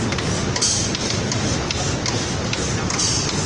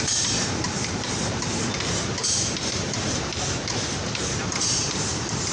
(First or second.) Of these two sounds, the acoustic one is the first